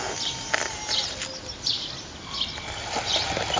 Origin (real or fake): real